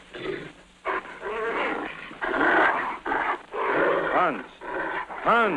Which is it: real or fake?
real